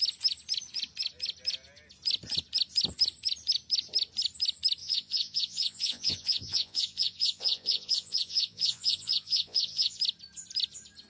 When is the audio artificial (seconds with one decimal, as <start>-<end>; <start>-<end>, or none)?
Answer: 4.8-10.0